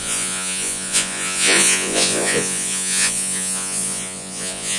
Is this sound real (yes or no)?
no